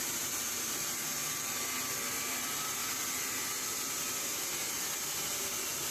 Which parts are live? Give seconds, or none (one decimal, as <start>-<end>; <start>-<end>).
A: 1.2-2.2; 2.8-5.2